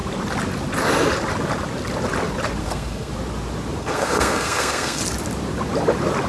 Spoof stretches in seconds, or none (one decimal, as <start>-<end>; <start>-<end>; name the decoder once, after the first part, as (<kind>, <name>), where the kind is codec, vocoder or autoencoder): 2.6-3.1 (codec, SNAC); 3.8-5.0